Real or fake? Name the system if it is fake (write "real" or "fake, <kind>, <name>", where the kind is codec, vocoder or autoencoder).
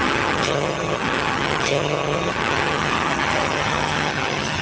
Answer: fake, vocoder, HiFi-GAN